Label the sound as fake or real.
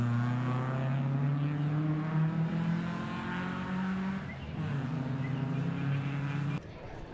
real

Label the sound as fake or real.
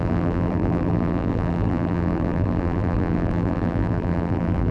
fake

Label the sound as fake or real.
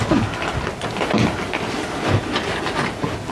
real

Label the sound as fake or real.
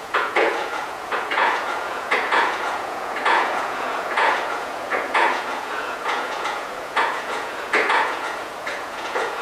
fake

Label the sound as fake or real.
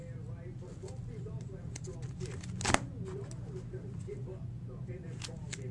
real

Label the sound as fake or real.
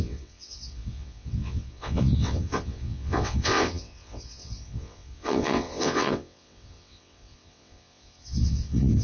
fake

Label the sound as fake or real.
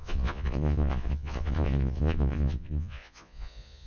fake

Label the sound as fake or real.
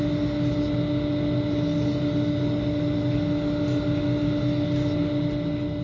real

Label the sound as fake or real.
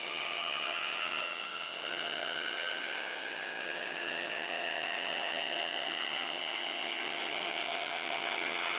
fake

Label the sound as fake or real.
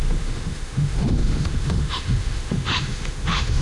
fake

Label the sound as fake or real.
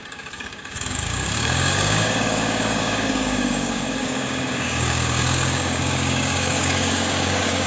fake